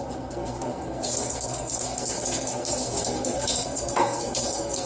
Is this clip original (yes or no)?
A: no